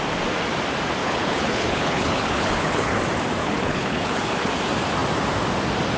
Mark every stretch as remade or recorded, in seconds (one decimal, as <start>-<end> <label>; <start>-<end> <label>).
0.0-1.0 recorded; 1.0-3.0 remade; 3.0-3.4 recorded; 3.4-4.5 remade; 4.5-6.0 recorded